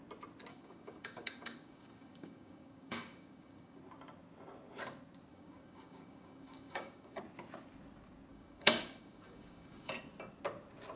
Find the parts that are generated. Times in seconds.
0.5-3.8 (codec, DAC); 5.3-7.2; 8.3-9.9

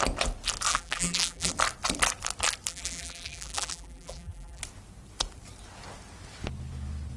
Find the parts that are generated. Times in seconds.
0.7-1.5 (vocoder, BigVGAN v2); 2.7-4.6

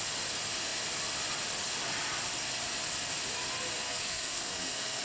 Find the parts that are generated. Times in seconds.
3.9-5.0 (codec, SNAC)

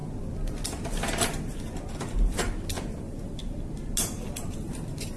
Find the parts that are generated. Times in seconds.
3.0-3.4 (vocoder, BigVGAN v2); 4.5-5.2

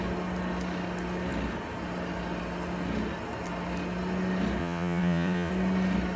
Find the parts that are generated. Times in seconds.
4.6-5.5 (vocoder, Vocos)

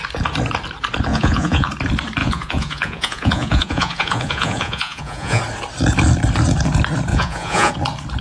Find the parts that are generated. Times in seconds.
1.1-1.7 (vocoder, Vocos); 2.2-5.4; 7.1-7.7